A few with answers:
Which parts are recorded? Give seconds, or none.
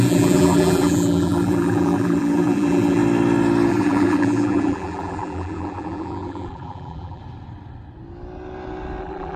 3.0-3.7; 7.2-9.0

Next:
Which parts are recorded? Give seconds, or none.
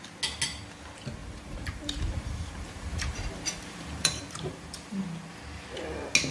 0.0-1.2; 5.0-6.3